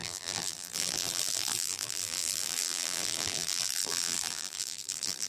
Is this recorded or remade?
remade